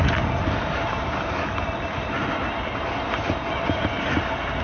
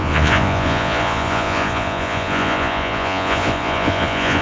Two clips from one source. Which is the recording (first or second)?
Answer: first